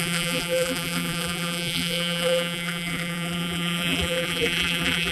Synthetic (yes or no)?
yes